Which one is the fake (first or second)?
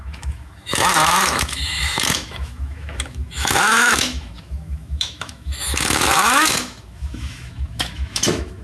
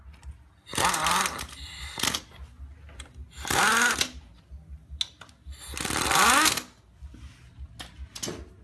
first